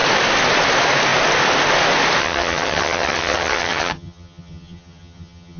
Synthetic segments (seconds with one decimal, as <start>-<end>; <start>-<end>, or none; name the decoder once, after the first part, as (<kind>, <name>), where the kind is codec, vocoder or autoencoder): 2.2-5.6 (vocoder, HiFi-GAN)